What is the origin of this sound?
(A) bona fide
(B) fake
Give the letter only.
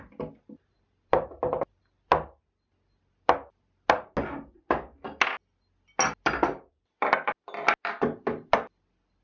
A